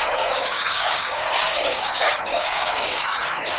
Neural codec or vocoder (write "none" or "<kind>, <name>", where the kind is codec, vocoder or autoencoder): codec, DAC